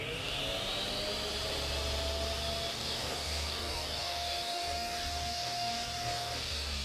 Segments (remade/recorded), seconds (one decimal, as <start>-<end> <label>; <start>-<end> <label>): 0.0-0.4 remade; 0.4-2.7 recorded; 2.7-6.8 remade